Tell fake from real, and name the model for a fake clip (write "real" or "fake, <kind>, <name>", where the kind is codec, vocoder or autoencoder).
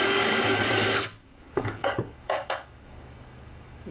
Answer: fake, codec, DAC